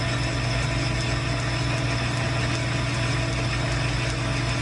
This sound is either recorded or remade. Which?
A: recorded